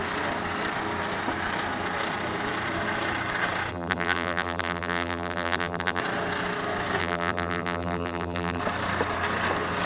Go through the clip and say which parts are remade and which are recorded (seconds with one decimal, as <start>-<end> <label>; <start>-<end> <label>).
0.0-3.7 recorded; 3.7-6.0 remade; 6.0-7.0 recorded; 7.0-8.6 remade; 8.6-9.9 recorded